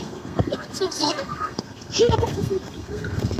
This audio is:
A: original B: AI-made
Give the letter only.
B